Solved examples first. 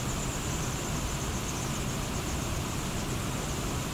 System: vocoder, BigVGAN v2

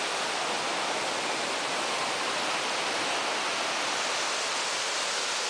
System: none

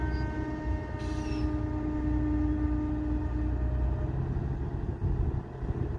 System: none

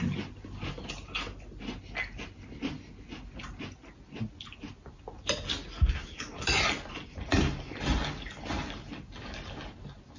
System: none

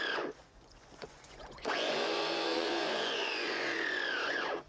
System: vocoder, Vocos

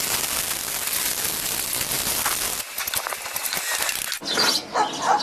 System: none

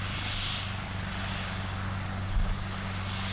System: none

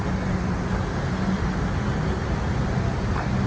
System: none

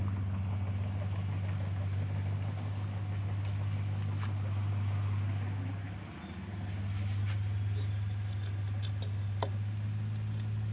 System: none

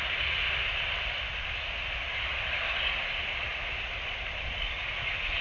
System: none